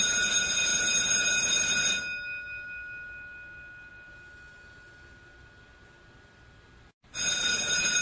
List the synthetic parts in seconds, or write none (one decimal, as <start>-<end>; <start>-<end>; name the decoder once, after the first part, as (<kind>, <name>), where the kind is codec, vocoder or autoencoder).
none